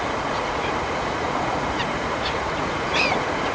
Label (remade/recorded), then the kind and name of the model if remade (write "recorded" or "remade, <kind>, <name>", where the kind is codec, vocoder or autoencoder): remade, vocoder, Vocos